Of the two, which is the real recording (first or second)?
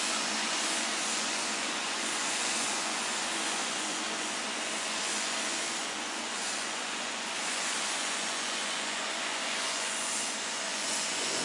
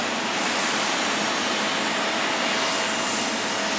second